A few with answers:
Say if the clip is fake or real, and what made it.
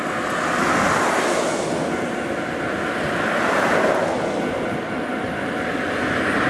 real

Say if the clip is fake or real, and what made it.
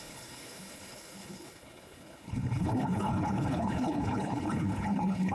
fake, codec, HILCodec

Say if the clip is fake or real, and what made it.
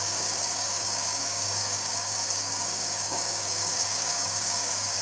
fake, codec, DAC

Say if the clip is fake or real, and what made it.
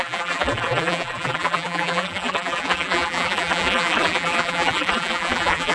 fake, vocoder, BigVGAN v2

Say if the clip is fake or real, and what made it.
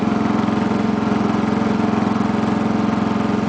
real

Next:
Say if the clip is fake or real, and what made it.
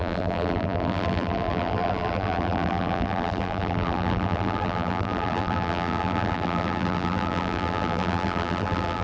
fake, vocoder, BigVGAN v2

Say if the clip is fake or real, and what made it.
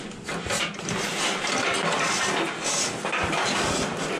real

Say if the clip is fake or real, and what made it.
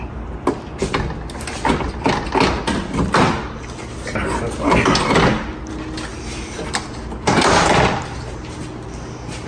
real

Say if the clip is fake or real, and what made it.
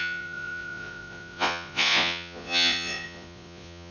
fake, vocoder, Vocos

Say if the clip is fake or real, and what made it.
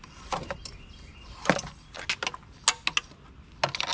real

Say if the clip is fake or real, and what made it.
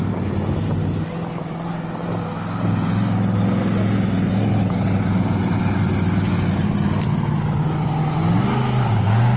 real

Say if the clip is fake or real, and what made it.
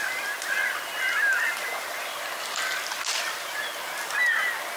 real